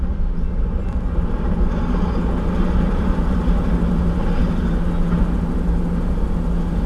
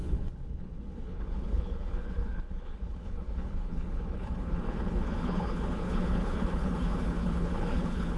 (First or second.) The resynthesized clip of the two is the second